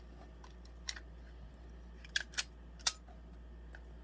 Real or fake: real